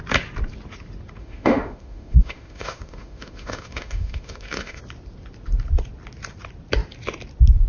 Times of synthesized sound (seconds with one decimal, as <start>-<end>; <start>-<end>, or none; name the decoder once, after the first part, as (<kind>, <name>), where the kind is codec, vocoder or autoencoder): 1.2-4.8 (autoencoder, DAC-VAE)